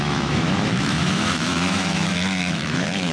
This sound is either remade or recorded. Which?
remade